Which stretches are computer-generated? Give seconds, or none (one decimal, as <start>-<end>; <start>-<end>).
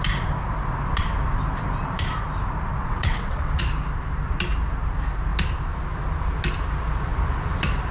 2.8-3.6